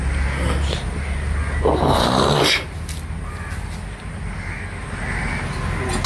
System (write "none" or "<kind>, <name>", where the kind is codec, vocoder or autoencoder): none